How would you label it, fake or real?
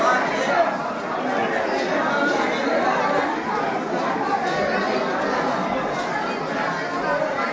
real